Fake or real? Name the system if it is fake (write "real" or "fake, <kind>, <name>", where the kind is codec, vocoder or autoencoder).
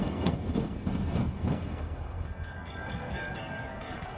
fake, codec, SNAC